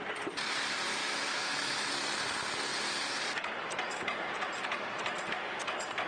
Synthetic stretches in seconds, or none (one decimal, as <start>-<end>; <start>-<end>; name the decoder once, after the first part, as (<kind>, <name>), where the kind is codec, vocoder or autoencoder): 1.0-1.9 (autoencoder, DAC-VAE)